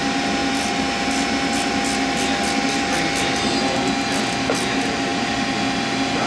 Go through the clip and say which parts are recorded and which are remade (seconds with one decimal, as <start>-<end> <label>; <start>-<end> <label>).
0.0-6.3 recorded